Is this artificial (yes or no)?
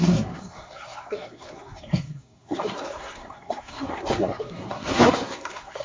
yes